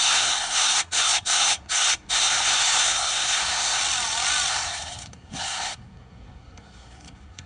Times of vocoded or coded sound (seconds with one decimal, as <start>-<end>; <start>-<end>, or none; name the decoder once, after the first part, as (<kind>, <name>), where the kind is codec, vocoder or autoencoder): 0.0-3.8 (codec, SNAC); 4.5-7.5

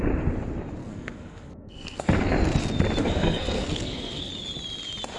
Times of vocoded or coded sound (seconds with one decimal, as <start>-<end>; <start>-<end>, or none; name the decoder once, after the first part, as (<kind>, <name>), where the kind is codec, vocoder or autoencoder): 0.8-2.3 (codec, SNAC); 3.0-4.3